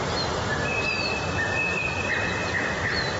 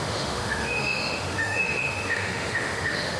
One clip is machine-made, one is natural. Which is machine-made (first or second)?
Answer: second